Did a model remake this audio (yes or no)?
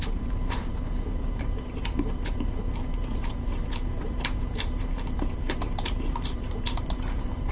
yes